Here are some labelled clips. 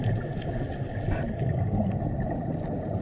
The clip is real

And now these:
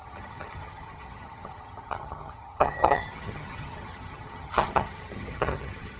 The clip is fake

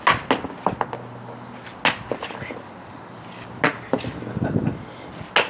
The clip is real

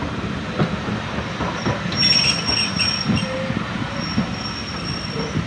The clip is real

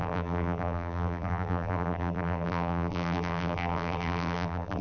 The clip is fake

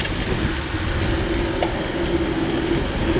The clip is real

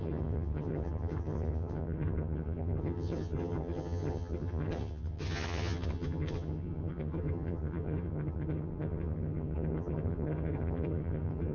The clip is fake